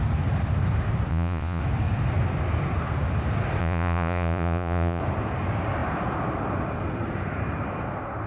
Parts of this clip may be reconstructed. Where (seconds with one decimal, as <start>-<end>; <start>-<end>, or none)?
1.1-1.6; 3.6-5.0